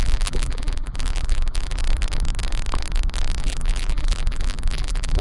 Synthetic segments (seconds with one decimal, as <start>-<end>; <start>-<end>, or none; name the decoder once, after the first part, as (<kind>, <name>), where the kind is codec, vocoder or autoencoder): 0.0-1.8 (vocoder, BigVGAN v2); 3.4-5.2